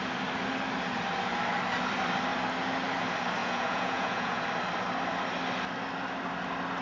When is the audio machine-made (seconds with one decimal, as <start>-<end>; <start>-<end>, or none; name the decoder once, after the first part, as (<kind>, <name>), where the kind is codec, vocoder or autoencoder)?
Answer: 3.4-4.4 (vocoder, Vocos)